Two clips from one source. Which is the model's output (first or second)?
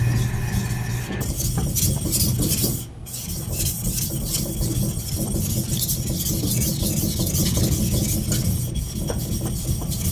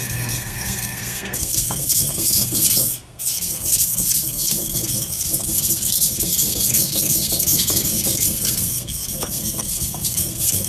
second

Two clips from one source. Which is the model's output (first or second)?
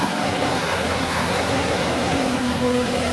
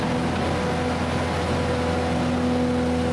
first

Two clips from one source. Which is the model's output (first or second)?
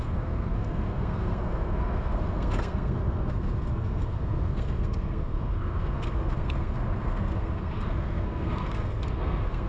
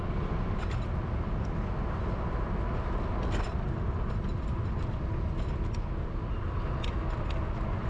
first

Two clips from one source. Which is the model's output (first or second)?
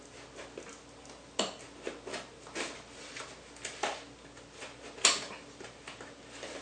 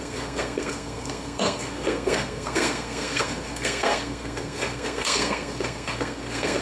second